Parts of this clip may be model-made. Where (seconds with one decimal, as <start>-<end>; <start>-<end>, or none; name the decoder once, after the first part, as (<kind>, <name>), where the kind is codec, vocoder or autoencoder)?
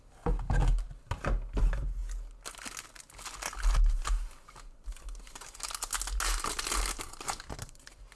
none